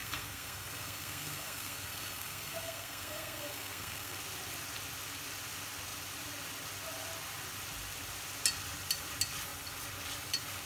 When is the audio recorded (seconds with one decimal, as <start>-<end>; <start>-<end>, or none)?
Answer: 4.2-10.7